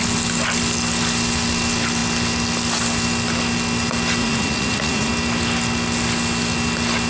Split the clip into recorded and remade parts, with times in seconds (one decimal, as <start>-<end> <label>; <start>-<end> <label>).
0.0-4.2 recorded; 4.2-5.1 remade; 5.1-7.1 recorded